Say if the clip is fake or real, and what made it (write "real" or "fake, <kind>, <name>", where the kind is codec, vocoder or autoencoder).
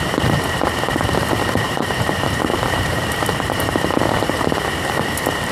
fake, vocoder, BigVGAN v2